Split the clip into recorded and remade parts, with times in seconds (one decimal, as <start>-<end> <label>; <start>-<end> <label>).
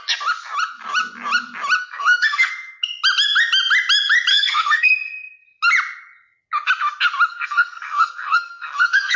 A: 0.0-1.8 recorded; 1.8-2.5 remade; 2.5-4.3 recorded; 4.3-4.9 remade; 4.9-7.3 recorded; 7.3-9.2 remade